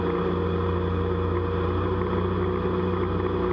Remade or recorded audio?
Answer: recorded